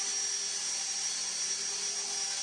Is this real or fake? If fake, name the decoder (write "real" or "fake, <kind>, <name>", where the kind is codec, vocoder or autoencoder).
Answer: real